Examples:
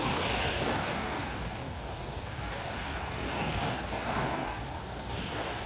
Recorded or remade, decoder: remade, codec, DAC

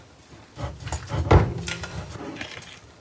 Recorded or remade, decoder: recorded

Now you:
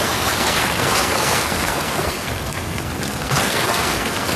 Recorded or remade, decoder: remade, codec, SNAC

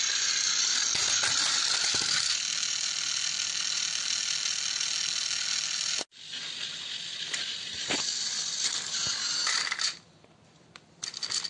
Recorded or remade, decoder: recorded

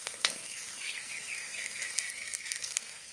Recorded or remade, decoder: remade, codec, SNAC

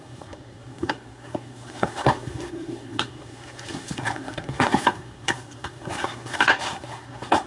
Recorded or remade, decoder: remade, codec, SNAC